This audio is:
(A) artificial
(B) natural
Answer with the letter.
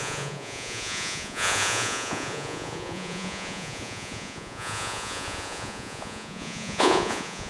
A